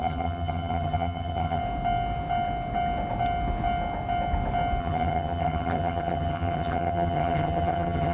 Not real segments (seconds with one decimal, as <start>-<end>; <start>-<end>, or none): 0.0-1.6; 4.8-8.1